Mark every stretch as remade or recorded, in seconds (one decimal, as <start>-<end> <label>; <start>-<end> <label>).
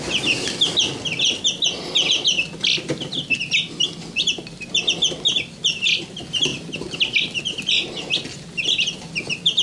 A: 0.0-9.6 recorded